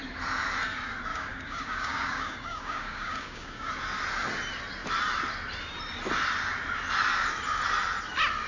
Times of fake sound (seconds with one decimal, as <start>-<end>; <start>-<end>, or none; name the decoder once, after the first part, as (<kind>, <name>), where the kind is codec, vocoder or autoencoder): 1.1-3.7 (codec, DAC)